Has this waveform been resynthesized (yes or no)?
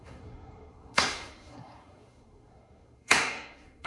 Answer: yes